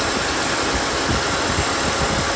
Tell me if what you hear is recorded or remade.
recorded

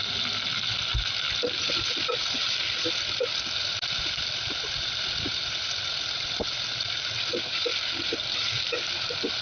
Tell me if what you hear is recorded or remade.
recorded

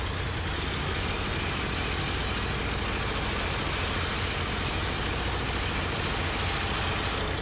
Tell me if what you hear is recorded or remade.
recorded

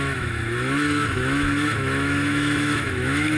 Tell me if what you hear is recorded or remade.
remade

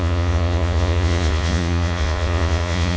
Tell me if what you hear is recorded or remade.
remade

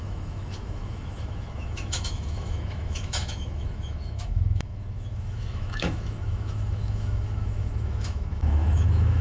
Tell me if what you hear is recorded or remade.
remade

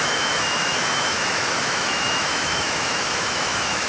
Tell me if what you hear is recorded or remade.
remade